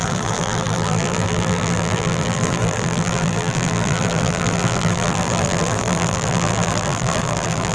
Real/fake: fake